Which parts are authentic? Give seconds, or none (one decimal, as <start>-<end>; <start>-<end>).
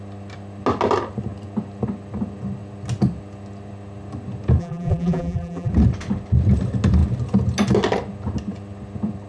0.0-4.6; 5.7-9.3